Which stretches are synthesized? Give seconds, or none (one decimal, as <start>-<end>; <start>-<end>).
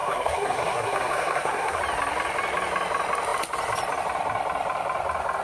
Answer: 0.0-1.8